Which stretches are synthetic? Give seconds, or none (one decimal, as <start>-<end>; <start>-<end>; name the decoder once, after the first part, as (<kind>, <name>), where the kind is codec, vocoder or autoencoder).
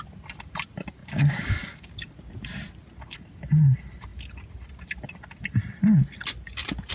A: 1.0-1.9 (codec, DAC)